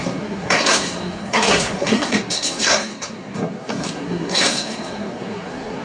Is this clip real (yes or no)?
no